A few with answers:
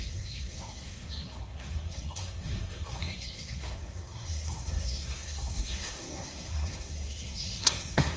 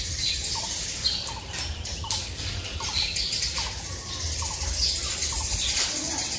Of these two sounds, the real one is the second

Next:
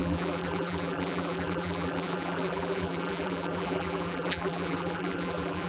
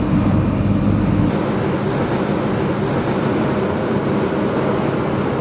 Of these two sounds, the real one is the second